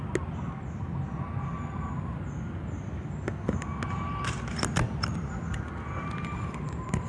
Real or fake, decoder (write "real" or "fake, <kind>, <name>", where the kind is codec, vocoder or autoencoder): real